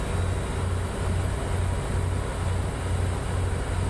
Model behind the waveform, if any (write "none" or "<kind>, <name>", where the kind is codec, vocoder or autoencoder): none